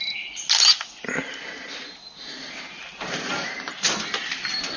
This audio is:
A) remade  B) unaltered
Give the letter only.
B